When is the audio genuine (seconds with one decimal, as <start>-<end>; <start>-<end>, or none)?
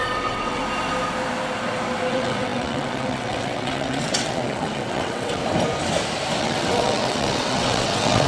0.6-2.1; 5.4-6.4